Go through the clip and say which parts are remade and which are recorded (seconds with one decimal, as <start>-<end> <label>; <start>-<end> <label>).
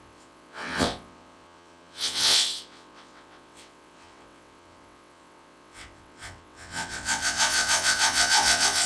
0.0-8.9 remade